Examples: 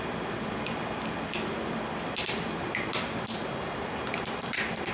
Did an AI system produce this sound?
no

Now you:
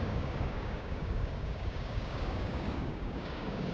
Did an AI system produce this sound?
yes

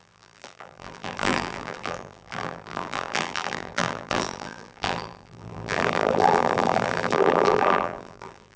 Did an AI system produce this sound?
yes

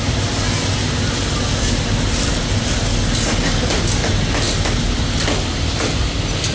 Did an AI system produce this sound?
no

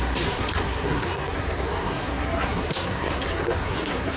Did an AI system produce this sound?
yes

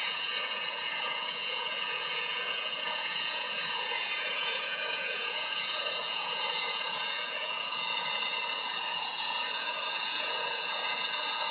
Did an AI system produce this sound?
yes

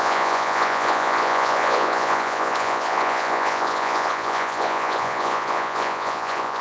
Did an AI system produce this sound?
yes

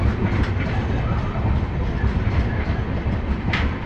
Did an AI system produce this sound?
no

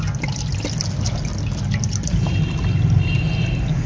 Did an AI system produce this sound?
no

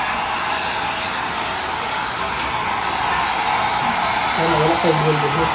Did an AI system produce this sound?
no